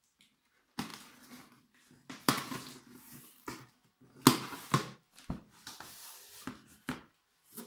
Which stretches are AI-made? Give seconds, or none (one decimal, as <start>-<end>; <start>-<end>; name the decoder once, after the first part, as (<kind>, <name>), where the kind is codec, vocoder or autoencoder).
none